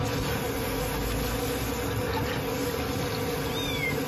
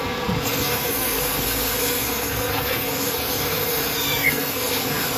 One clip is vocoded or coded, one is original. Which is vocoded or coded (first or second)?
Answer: second